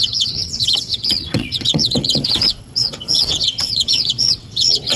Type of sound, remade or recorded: remade